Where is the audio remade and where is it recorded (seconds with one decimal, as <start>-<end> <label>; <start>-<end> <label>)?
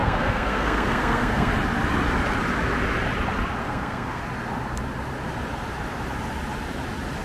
0.0-1.5 remade; 1.5-3.6 recorded; 3.6-4.2 remade; 4.2-7.2 recorded